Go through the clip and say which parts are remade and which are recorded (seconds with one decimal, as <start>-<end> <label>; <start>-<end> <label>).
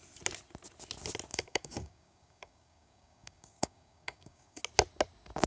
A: 0.0-1.3 recorded; 1.3-4.6 remade; 4.6-5.5 recorded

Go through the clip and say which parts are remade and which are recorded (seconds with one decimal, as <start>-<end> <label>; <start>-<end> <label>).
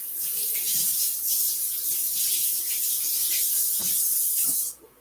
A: 0.0-3.8 remade; 3.8-4.5 recorded; 4.5-5.0 remade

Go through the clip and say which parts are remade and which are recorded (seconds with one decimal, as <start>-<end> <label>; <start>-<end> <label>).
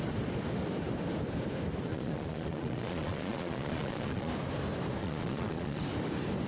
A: 0.0-1.9 recorded; 1.9-4.3 remade; 4.3-5.0 recorded; 5.0-5.8 remade; 5.8-6.5 recorded